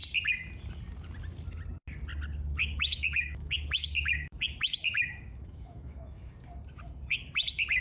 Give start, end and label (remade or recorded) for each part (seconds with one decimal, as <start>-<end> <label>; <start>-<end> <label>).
0.0-2.6 recorded; 2.6-6.3 remade; 6.3-7.8 recorded